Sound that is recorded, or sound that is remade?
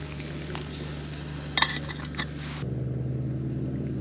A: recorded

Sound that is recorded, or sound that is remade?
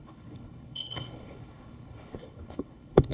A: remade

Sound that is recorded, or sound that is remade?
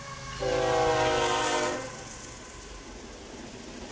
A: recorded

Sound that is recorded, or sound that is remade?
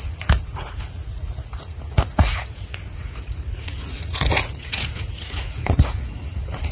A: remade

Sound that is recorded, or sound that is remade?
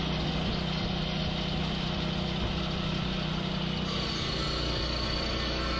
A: recorded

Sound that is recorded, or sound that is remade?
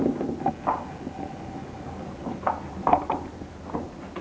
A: recorded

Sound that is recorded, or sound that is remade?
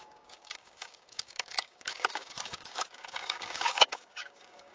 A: remade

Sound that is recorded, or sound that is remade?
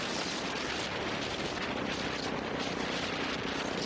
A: recorded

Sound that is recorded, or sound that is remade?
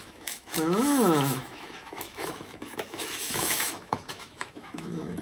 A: remade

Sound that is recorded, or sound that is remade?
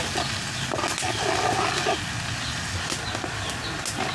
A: recorded